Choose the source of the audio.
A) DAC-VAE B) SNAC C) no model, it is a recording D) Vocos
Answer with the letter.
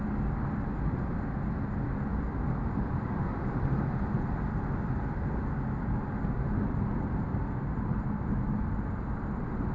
C